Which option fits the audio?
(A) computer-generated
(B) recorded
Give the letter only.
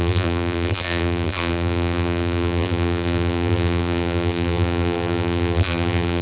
A